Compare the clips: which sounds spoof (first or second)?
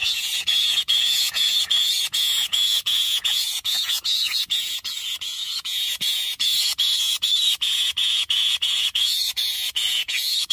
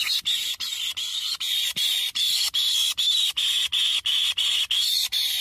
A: first